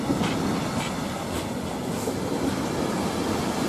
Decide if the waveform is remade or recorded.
recorded